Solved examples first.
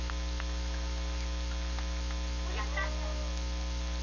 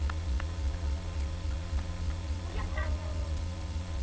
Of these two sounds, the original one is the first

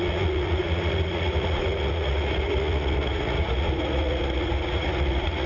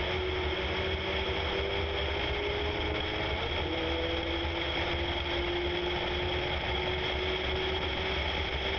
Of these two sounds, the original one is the second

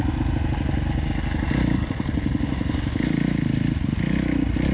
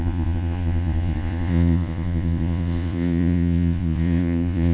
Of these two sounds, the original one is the first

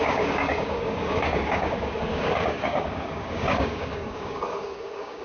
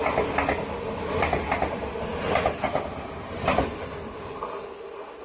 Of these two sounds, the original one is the second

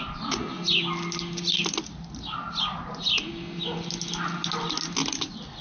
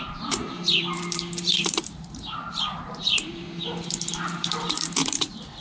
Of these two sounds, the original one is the first